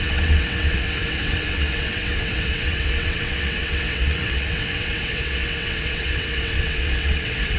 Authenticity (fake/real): fake